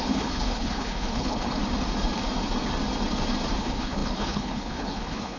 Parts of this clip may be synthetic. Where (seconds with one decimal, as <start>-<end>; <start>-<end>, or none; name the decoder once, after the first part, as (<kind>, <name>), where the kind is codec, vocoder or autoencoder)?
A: 0.0-1.6 (codec, HILCodec); 3.6-5.4